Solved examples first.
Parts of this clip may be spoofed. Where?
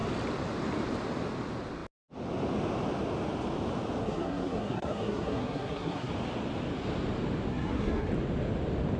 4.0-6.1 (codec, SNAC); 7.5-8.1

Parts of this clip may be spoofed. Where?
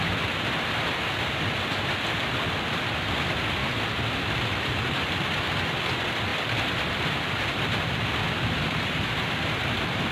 0.0-3.6 (vocoder, BigVGAN v2); 4.2-10.1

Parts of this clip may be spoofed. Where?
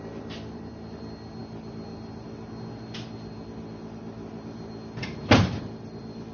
none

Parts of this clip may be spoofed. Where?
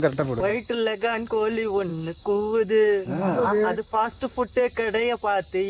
0.5-1.3 (codec, DAC); 1.9-4.6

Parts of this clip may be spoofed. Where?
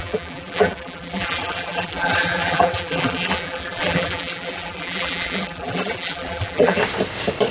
0.0-6.8 (vocoder, BigVGAN v2)